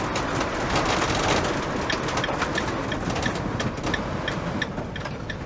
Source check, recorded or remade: recorded